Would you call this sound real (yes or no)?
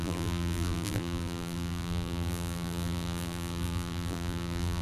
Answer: no